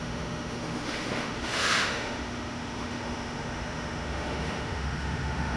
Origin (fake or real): fake